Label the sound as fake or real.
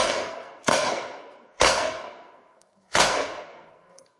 fake